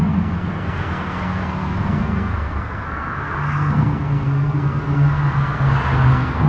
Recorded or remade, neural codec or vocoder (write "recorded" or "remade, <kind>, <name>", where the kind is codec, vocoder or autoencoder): remade, codec, SNAC